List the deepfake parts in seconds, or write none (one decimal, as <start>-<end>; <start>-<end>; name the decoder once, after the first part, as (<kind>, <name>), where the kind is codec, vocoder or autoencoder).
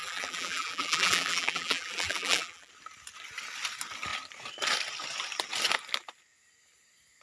0.0-2.7 (vocoder, BigVGAN v2)